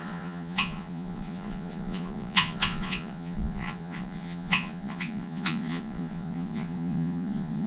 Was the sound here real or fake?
fake